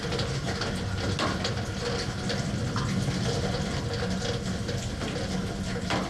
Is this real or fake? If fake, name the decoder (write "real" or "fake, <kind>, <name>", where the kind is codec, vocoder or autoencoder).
real